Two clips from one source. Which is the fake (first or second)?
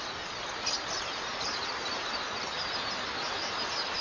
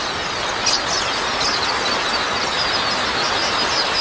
first